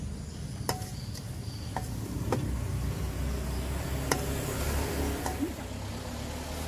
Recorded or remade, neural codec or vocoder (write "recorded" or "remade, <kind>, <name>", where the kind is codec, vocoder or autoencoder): recorded